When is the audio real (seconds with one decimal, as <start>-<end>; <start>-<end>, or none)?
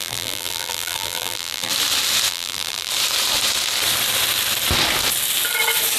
1.7-2.3; 2.9-6.0